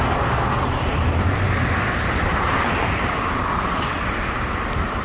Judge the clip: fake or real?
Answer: fake